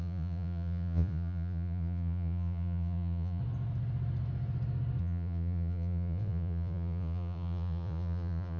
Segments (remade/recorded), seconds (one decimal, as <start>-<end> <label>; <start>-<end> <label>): 0.0-3.4 remade; 3.4-5.0 recorded; 5.0-8.6 remade